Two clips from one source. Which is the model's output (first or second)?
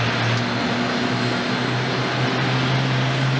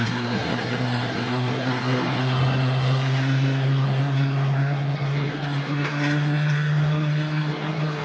second